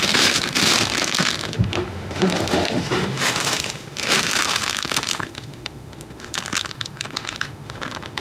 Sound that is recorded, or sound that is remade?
remade